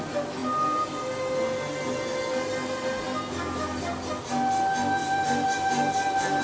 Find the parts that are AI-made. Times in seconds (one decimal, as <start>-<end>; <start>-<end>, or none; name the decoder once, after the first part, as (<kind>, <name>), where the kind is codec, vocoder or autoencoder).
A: none